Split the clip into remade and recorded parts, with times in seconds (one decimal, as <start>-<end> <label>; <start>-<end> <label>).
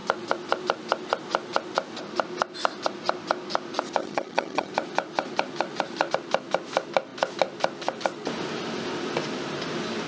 0.0-4.0 recorded; 4.0-4.7 remade; 4.7-10.1 recorded